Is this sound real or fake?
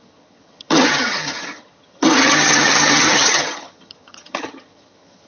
fake